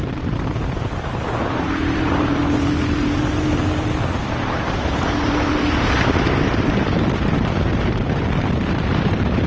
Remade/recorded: remade